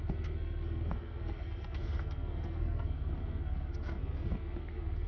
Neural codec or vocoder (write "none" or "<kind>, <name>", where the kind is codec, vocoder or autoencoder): codec, SNAC